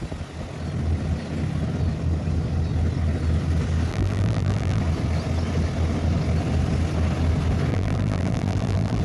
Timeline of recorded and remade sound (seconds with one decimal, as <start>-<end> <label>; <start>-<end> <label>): 0.0-3.9 recorded; 3.9-4.8 remade; 4.8-7.7 recorded; 7.7-9.0 remade